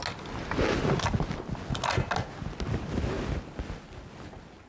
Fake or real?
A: real